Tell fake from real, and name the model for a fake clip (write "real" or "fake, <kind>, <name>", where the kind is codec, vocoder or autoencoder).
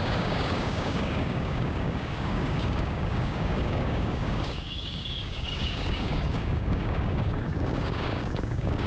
fake, codec, DAC